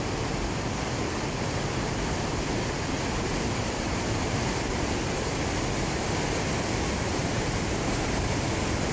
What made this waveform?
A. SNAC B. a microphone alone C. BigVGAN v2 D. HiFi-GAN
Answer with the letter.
B